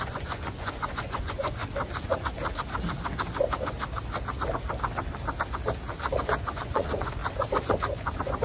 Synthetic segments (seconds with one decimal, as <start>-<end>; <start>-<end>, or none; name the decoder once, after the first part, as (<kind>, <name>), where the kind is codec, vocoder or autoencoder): 0.0-1.6 (vocoder, Vocos); 6.2-7.2; 7.9-8.4